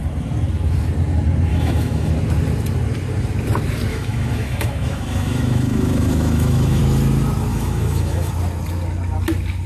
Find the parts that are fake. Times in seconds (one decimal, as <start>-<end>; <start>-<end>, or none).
1.5-2.1; 3.9-6.8; 7.5-8.3